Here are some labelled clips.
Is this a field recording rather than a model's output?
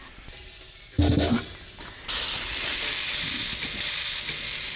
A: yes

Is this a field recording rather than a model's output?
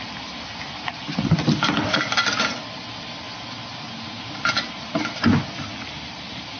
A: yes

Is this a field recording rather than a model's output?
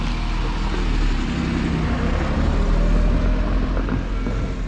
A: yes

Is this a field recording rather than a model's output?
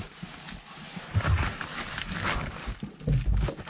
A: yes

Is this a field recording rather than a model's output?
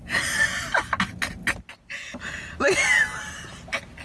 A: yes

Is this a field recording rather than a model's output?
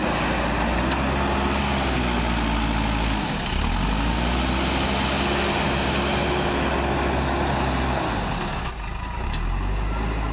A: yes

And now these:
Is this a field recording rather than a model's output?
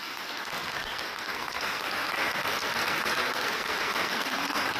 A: no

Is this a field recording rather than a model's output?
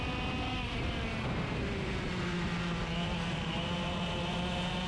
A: yes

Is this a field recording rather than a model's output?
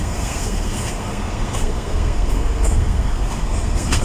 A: no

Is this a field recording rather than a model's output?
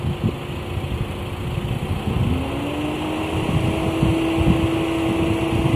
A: yes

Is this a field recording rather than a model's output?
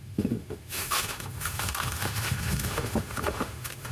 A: no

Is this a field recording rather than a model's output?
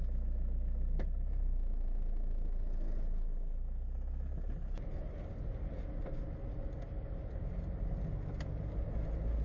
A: yes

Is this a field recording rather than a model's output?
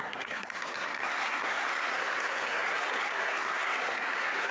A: no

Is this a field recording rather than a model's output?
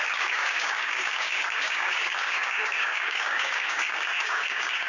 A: no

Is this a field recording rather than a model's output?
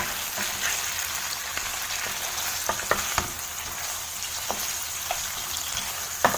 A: yes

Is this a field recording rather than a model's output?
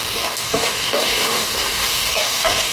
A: no